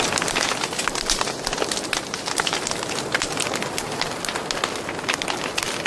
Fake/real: real